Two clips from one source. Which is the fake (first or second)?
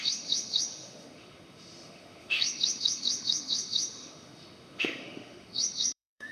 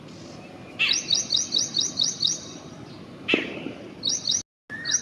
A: first